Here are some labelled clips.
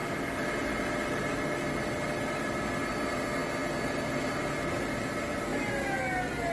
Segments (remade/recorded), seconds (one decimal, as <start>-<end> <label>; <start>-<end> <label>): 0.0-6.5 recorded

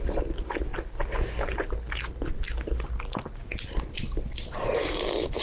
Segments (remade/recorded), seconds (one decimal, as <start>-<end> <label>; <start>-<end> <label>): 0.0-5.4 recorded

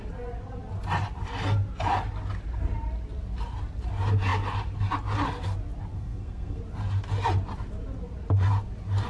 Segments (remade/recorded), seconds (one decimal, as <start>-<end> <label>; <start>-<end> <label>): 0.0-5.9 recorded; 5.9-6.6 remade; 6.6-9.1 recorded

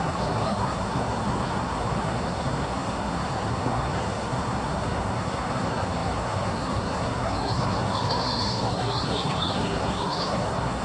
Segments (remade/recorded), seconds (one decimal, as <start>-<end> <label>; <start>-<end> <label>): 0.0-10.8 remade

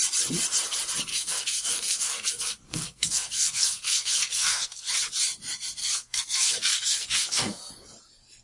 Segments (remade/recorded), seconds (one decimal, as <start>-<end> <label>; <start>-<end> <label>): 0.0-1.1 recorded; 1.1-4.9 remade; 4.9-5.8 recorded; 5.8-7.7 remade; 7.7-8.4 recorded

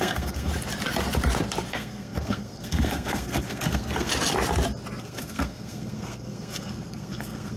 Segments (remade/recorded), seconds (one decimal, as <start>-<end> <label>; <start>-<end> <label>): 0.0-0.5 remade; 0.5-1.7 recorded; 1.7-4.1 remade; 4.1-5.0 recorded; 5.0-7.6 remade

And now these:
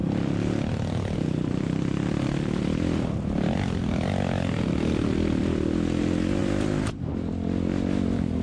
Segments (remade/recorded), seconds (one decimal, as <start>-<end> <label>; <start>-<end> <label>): 0.0-8.4 recorded